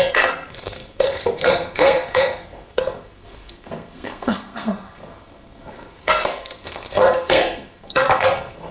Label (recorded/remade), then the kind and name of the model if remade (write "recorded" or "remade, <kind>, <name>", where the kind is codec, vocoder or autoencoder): remade, codec, SNAC